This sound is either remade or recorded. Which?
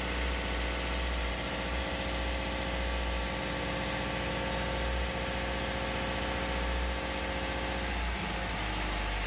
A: recorded